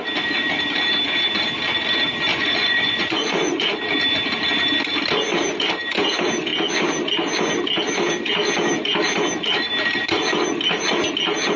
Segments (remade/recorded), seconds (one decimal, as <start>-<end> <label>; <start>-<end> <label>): 0.0-2.3 recorded; 2.3-3.8 remade; 3.8-11.6 recorded